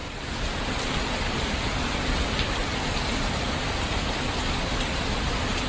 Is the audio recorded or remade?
recorded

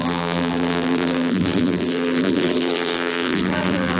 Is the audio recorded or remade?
remade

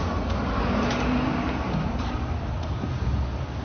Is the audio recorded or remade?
remade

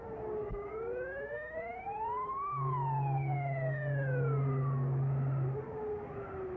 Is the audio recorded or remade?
recorded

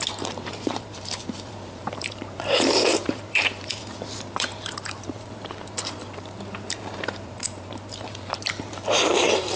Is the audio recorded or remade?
remade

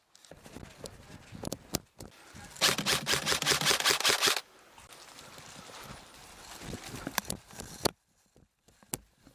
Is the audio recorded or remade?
recorded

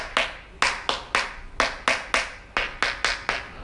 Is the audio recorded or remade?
recorded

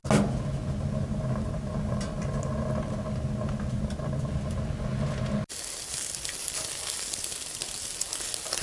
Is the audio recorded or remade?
recorded